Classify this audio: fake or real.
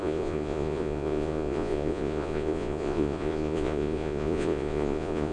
fake